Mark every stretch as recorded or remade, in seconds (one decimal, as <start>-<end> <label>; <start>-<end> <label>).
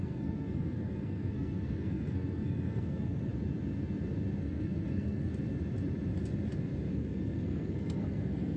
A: 0.0-3.3 remade; 3.3-4.4 recorded; 4.4-5.3 remade; 5.3-6.9 recorded; 6.9-8.6 remade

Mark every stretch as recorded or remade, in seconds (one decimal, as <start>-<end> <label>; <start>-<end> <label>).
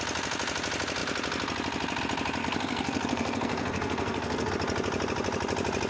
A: 0.0-2.4 recorded; 2.4-4.5 remade; 4.5-5.9 recorded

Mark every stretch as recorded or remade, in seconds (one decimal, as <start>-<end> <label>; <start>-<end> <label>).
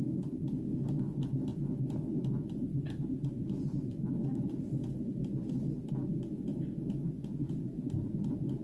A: 0.0-8.6 recorded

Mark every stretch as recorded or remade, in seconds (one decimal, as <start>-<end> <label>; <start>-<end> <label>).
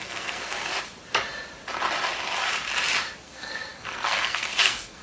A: 0.0-0.7 remade; 0.7-3.2 recorded; 3.2-5.0 remade